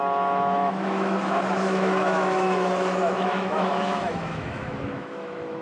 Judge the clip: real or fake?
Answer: fake